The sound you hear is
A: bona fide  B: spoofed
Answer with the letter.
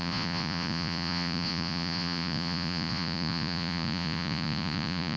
B